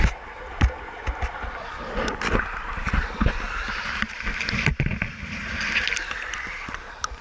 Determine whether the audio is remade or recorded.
recorded